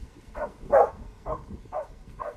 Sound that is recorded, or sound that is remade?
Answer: remade